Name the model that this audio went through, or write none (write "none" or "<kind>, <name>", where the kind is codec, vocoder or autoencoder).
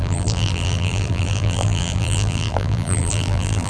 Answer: vocoder, BigVGAN v2